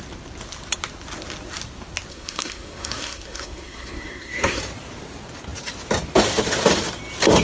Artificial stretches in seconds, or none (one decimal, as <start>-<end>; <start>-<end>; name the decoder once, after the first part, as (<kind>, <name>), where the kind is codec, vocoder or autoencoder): 2.1-4.6 (codec, SNAC)

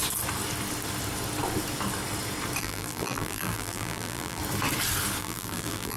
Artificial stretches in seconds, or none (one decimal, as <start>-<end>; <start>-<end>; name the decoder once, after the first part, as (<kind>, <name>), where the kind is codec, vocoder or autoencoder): 2.6-4.4 (vocoder, BigVGAN v2); 5.2-6.0

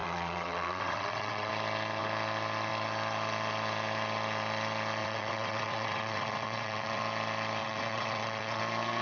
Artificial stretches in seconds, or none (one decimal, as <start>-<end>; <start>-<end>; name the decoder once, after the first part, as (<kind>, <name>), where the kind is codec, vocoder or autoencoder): 0.0-1.5 (vocoder, WaveNeXt); 5.0-7.0; 7.6-8.6

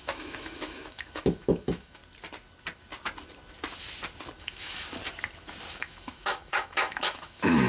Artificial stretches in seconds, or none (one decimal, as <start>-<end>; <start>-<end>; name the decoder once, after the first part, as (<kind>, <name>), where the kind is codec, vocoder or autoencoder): 0.0-2.0 (autoencoder, DAC-VAE); 4.4-5.0; 5.7-7.7

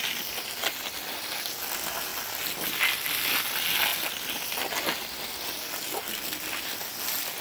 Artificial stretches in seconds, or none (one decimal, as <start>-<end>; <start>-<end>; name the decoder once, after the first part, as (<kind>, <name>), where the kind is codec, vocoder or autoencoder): none

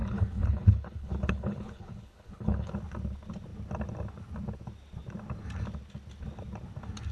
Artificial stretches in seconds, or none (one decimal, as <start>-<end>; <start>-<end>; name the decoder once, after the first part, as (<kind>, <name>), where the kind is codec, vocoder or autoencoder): 0.0-2.7 (codec, HILCodec)

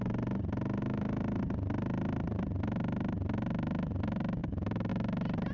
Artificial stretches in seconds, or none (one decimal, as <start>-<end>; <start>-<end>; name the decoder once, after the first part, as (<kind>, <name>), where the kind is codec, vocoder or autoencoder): 0.8-1.4 (autoencoder, DAC-VAE); 4.4-4.9